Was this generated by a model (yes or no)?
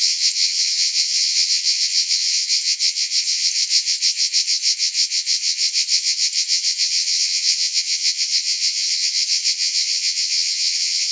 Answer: yes